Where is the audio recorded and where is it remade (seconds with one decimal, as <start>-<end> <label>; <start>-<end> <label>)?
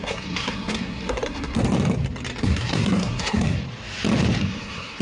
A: 0.0-1.6 remade; 1.6-2.4 recorded; 2.4-3.6 remade; 3.6-4.4 recorded; 4.4-5.0 remade